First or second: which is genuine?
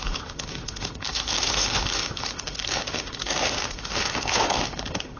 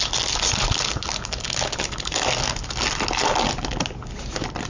second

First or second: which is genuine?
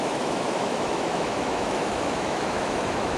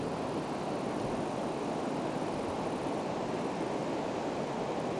second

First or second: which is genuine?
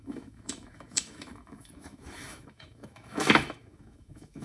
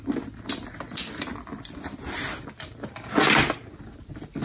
second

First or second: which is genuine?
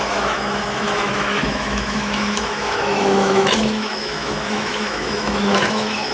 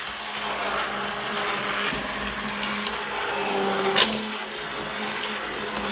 second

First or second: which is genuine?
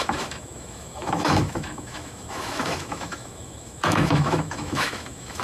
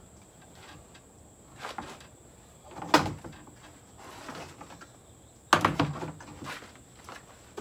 second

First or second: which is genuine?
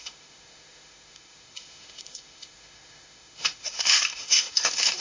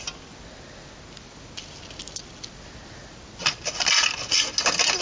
second